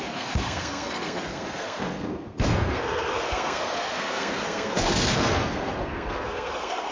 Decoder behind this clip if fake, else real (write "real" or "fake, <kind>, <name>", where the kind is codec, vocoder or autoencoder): fake, codec, SNAC